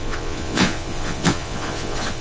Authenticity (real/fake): fake